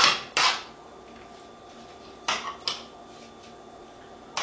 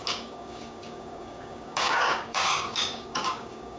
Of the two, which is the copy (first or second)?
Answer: second